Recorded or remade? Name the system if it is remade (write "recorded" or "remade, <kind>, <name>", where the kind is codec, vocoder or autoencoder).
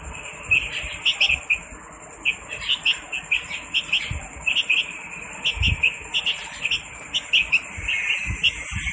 recorded